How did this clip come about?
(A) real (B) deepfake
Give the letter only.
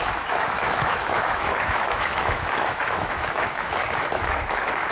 B